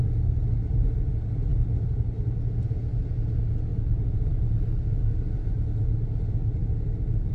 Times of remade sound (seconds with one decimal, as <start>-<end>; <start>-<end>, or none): none